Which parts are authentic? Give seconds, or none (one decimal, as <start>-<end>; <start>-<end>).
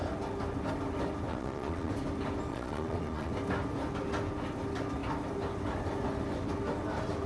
0.0-1.3; 1.9-2.5; 3.3-7.3